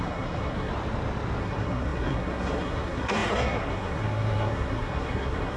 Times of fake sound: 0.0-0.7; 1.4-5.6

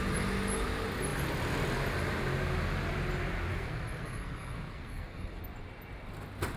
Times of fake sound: 3.5-5.4